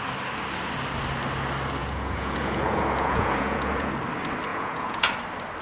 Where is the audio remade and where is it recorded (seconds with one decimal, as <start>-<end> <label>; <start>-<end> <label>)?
0.0-1.8 recorded; 1.8-3.9 remade; 3.9-4.5 recorded; 4.5-5.1 remade; 5.1-5.6 recorded